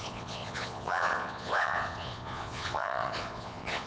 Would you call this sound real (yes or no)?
no